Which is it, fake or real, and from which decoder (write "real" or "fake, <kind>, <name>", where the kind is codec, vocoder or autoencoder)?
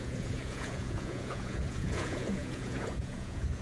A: fake, vocoder, Vocos